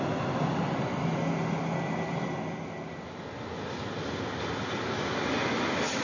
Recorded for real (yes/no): yes